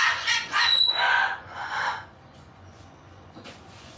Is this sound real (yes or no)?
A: no